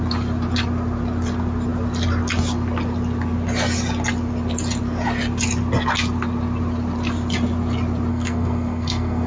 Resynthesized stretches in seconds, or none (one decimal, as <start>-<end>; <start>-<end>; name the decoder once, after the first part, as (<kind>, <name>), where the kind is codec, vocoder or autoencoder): 8.1-9.3 (codec, SNAC)